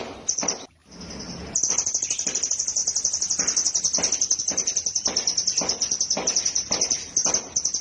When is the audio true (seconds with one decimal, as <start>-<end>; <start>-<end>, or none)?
0.8-1.7; 2.8-4.4